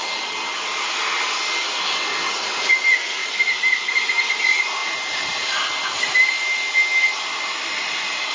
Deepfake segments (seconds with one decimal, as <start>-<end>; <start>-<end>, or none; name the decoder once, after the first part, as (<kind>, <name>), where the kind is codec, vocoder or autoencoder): none